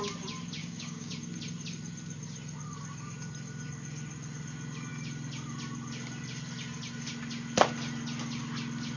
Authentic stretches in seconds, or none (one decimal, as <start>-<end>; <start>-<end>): 0.0-0.6; 1.1-9.0